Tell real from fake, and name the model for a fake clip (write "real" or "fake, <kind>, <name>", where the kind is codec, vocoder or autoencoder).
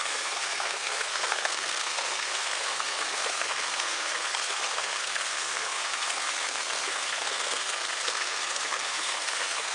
fake, codec, SNAC